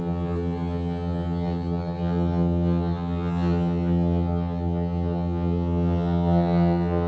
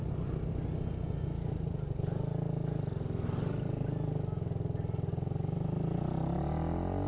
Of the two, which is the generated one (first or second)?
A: first